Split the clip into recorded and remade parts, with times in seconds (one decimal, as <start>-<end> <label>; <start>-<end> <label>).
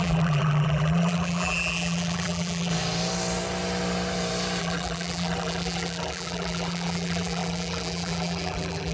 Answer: 0.0-2.7 remade; 2.7-4.6 recorded; 4.6-8.9 remade